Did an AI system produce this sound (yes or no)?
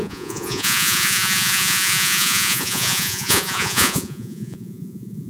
yes